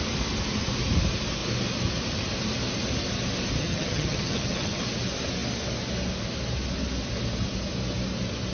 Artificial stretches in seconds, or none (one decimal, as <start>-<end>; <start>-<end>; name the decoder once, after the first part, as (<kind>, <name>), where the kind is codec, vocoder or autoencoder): 3.6-4.8 (vocoder, HiFi-GAN)